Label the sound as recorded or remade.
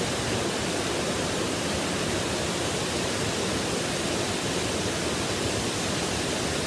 recorded